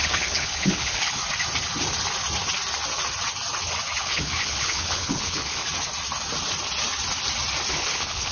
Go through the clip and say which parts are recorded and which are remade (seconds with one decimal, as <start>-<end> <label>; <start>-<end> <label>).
0.0-1.2 remade; 1.2-4.0 recorded; 4.0-5.6 remade; 5.6-7.7 recorded; 7.7-8.3 remade